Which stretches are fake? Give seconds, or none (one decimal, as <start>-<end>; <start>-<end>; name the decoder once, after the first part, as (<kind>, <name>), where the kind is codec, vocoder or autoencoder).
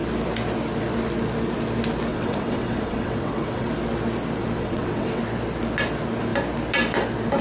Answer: 2.1-3.7 (vocoder, WaveNeXt); 4.6-5.2